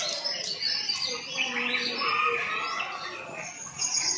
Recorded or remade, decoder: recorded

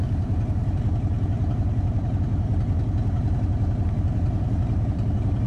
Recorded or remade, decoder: remade, vocoder, BigVGAN v2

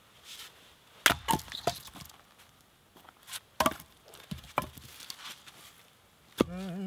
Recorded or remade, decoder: recorded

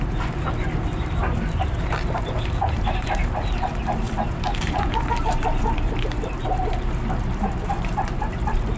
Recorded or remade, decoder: remade, vocoder, BigVGAN v2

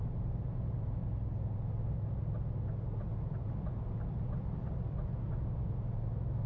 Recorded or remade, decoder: recorded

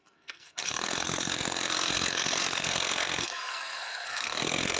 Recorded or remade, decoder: remade, codec, SNAC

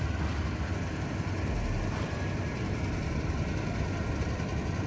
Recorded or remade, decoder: recorded